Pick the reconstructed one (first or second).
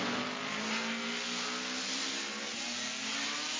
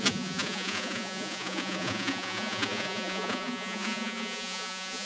second